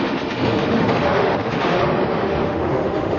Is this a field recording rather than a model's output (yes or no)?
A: no